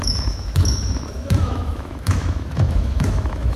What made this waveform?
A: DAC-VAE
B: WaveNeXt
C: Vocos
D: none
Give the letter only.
A